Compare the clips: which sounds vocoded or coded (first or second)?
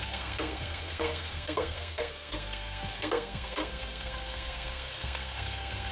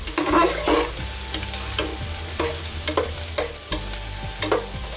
first